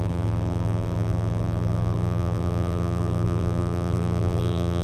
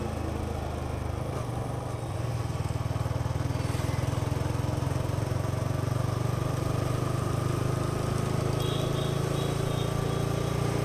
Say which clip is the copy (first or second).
first